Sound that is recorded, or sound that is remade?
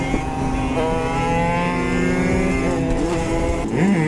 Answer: recorded